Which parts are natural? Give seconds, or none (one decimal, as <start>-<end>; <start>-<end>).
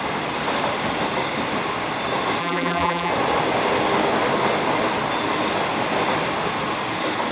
0.0-2.4; 3.1-7.3